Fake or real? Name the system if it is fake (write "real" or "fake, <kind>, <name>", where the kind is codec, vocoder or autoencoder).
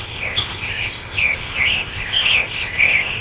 fake, codec, ZipCodec